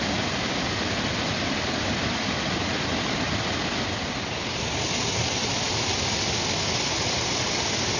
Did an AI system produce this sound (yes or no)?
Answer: no